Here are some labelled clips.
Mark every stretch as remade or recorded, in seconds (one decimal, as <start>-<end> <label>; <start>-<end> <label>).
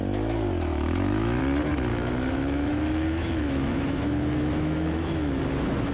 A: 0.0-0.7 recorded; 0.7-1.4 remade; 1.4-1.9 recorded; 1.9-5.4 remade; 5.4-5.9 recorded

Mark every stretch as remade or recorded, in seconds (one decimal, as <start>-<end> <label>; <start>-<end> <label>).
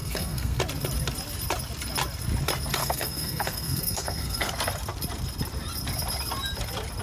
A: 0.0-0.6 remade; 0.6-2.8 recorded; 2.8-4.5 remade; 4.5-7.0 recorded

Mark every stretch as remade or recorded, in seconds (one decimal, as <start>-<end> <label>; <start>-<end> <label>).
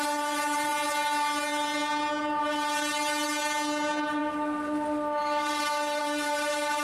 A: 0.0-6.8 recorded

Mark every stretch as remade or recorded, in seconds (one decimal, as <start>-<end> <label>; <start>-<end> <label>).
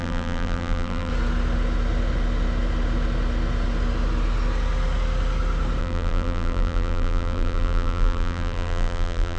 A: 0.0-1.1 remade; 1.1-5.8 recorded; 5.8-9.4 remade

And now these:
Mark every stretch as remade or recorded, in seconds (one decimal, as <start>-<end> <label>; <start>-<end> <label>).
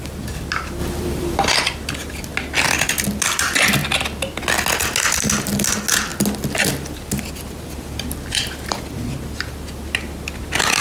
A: 0.0-0.8 recorded; 0.8-1.5 remade; 1.5-10.8 recorded